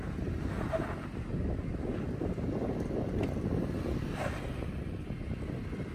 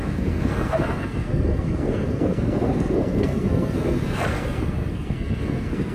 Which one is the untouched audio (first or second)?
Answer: first